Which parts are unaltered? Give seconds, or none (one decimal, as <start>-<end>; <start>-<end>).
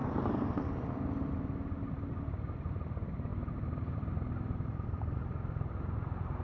0.0-6.4